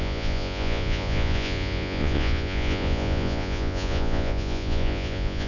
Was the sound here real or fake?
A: fake